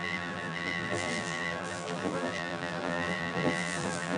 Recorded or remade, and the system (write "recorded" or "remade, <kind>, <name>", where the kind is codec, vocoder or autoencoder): remade, vocoder, BigVGAN v2